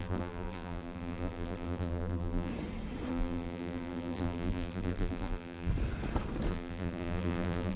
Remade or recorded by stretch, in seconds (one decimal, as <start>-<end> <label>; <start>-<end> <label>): 0.0-2.5 remade; 2.5-3.1 recorded; 3.1-5.7 remade; 5.7-6.5 recorded; 6.5-7.8 remade